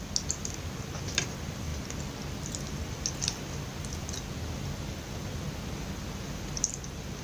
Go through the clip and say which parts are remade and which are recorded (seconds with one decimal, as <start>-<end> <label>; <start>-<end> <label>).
0.0-7.2 recorded